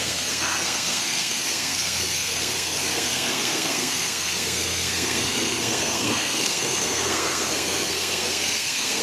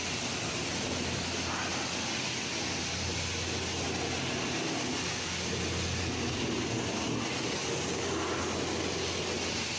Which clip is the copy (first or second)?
first